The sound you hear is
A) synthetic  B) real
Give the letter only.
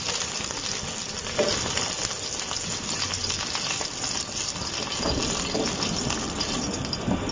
B